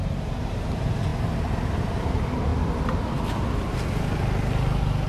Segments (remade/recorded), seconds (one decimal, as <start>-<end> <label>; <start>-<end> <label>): 0.0-2.5 remade; 2.5-5.1 recorded

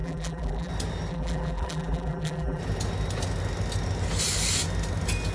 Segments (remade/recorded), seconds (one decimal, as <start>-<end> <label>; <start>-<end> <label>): 0.0-0.7 remade; 0.7-1.1 recorded; 1.1-2.6 remade; 2.6-5.3 recorded

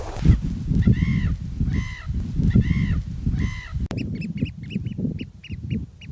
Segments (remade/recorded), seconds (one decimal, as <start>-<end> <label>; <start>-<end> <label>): 0.0-6.1 recorded